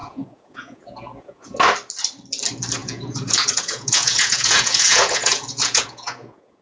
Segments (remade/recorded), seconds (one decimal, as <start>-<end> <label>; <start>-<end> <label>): 0.0-1.6 remade; 1.6-2.8 recorded; 2.8-6.6 remade

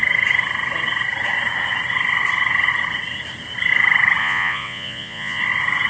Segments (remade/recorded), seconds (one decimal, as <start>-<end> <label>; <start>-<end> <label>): 0.0-4.2 recorded; 4.2-5.4 remade; 5.4-5.9 recorded

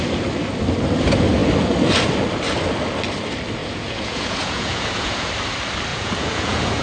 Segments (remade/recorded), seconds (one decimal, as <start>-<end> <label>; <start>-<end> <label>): 0.0-3.6 recorded; 3.6-5.3 remade; 5.3-5.9 recorded; 5.9-6.8 remade

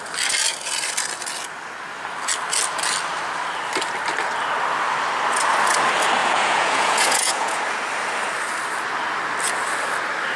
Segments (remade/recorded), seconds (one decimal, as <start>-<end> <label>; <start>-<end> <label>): 0.0-6.2 recorded; 6.2-7.6 remade; 7.6-10.4 recorded